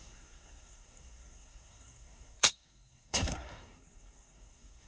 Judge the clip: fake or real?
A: fake